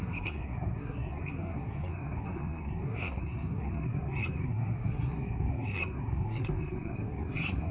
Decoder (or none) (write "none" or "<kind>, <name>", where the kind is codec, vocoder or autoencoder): codec, SNAC